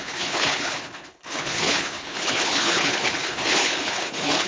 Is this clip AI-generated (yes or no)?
yes